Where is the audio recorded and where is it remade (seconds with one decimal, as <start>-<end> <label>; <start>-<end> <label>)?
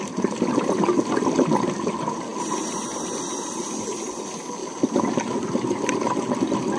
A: 0.0-2.3 recorded; 2.3-3.2 remade; 3.2-4.6 recorded; 4.6-5.9 remade; 5.9-6.8 recorded